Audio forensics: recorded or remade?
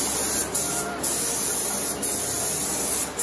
recorded